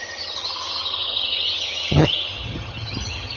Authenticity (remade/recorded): remade